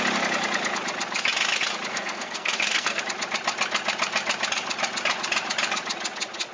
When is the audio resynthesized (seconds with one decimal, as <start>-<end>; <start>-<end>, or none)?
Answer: 1.9-3.0